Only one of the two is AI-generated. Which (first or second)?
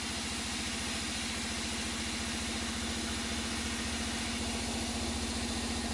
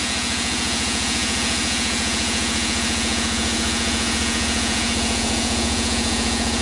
second